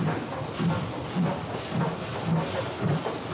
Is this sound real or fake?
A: real